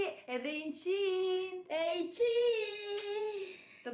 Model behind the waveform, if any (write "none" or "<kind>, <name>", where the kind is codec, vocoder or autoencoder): vocoder, Vocos